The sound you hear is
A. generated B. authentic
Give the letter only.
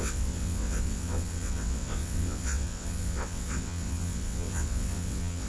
A